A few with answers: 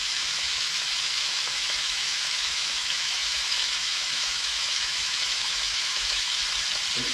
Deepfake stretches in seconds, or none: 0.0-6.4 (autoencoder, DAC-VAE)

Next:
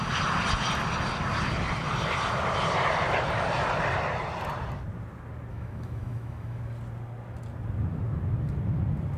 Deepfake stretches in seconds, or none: 5.5-6.6 (autoencoder, DAC-VAE)

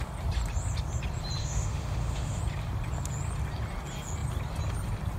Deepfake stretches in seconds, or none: 1.4-2.4 (autoencoder, DAC-VAE)

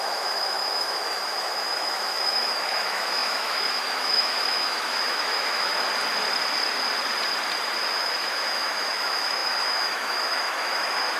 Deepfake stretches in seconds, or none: 0.0-5.7 (autoencoder, DAC-VAE); 7.9-11.2

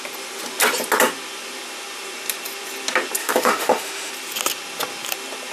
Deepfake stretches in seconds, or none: 3.2-4.1 (autoencoder, DAC-VAE)

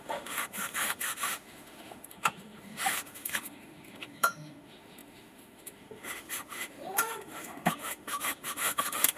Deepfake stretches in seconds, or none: 0.0-9.2 (autoencoder, DAC-VAE)

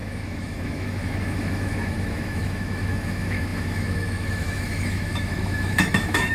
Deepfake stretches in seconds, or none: 0.0-6.3 (autoencoder, DAC-VAE)